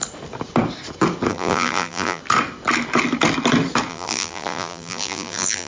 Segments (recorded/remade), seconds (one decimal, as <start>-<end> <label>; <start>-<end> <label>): 0.0-1.3 recorded; 1.3-2.2 remade; 2.2-3.9 recorded; 3.9-5.7 remade